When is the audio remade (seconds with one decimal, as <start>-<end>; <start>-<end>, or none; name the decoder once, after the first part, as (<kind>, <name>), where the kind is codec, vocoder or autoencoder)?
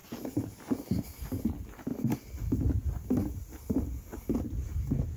none